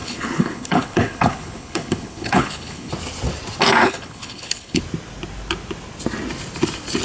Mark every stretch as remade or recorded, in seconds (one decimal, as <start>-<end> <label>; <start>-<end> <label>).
0.0-2.9 remade; 2.9-3.8 recorded; 3.8-4.8 remade; 4.8-7.0 recorded